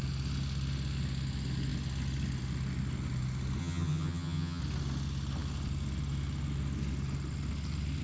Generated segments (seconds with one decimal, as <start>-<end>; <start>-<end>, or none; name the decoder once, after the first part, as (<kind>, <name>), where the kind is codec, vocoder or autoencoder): 3.6-4.6 (vocoder, HiFi-GAN)